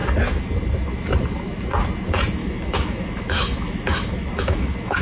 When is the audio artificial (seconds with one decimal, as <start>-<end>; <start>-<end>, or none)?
2.4-5.0